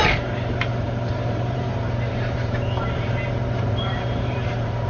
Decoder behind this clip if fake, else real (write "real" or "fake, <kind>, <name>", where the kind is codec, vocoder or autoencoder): fake, vocoder, BigVGAN v2